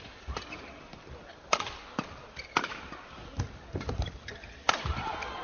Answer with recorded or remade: recorded